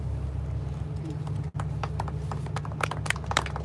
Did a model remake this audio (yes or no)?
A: no